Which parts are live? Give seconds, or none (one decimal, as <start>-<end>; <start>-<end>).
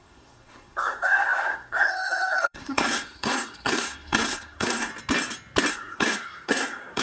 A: 4.9-5.7